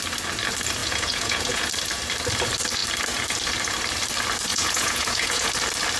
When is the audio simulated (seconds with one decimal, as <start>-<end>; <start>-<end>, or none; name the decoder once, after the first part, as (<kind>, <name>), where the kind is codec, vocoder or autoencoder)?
0.8-1.7 (vocoder, Vocos); 4.5-5.5